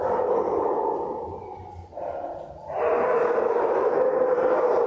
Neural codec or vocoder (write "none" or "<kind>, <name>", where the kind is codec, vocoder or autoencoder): none